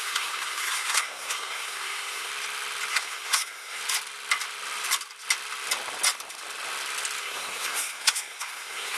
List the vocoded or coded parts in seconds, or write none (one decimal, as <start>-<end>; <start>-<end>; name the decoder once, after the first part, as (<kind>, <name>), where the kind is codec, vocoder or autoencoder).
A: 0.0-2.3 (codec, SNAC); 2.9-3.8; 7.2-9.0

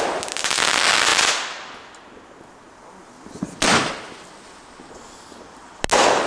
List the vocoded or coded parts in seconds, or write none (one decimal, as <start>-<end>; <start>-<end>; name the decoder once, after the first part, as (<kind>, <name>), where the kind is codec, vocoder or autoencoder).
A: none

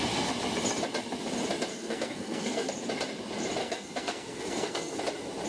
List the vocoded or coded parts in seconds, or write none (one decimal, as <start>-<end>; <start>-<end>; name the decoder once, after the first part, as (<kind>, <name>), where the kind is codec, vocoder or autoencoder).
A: 1.7-2.7 (codec, SNAC); 3.6-5.0

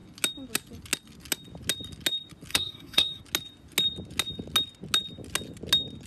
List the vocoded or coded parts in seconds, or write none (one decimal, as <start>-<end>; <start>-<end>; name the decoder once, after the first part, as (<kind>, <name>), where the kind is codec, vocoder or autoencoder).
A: 2.5-3.2 (codec, SNAC)

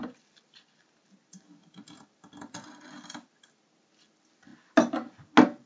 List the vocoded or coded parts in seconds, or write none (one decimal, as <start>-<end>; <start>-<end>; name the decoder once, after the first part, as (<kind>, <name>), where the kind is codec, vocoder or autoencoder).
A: none